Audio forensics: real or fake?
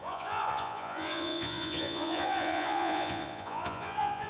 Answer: fake